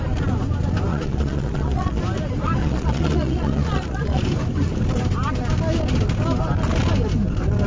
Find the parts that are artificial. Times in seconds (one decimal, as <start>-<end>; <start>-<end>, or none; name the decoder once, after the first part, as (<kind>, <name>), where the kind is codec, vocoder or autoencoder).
0.9-2.0 (vocoder, Vocos); 2.6-4.2